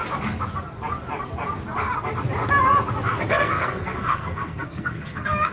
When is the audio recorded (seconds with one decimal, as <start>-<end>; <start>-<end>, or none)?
0.0-3.3